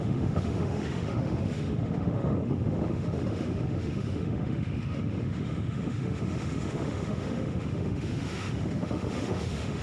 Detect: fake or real fake